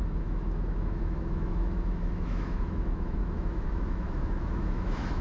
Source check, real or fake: fake